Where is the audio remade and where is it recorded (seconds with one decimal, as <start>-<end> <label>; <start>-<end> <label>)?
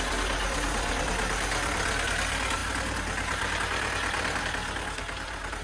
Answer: 0.0-5.6 recorded